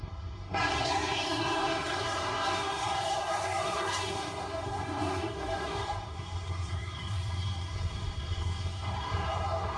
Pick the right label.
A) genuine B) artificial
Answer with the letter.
B